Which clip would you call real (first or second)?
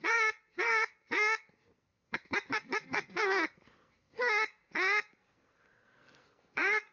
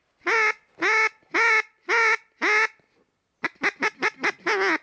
second